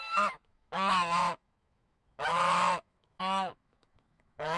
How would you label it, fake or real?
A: fake